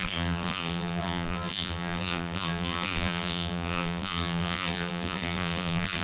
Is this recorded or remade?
remade